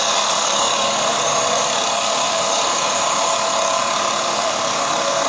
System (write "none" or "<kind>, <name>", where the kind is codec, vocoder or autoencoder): codec, DAC